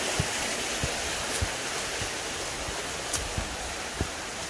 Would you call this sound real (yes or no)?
yes